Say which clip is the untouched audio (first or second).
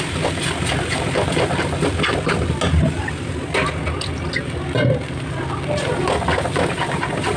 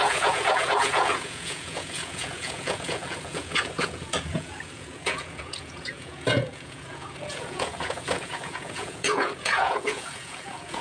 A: first